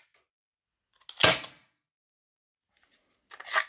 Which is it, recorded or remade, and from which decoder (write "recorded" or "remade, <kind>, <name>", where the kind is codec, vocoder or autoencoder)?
recorded